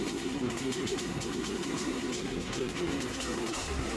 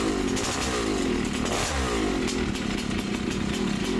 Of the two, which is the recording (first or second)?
second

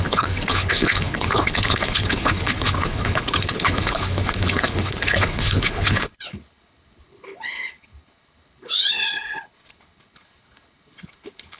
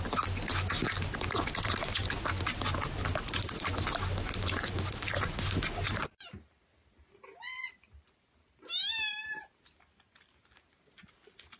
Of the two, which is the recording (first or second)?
second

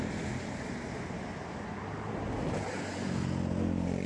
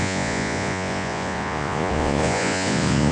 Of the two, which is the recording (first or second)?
first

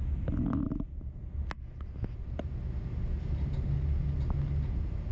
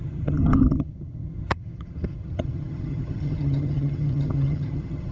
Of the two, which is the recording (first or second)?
first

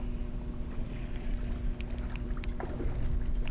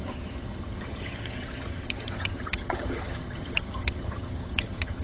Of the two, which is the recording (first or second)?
first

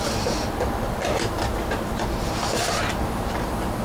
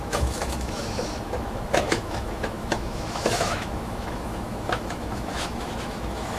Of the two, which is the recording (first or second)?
first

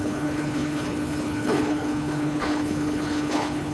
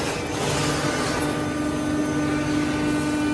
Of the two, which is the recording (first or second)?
second